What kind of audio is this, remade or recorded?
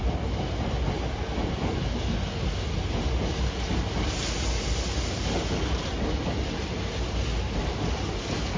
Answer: recorded